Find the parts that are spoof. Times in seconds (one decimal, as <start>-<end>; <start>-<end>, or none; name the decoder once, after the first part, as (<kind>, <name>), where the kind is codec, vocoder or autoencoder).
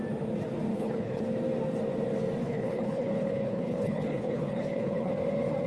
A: 0.7-1.2 (codec, HILCodec); 2.4-5.1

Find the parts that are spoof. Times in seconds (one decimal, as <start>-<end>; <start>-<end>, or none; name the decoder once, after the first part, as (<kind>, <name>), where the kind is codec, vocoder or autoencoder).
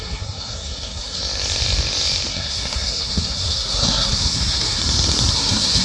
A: 0.0-1.2 (codec, SNAC); 2.3-4.8; 5.3-5.8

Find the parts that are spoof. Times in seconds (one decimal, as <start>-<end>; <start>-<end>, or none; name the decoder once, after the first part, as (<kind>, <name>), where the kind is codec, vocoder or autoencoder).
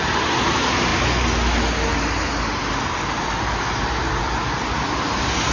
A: none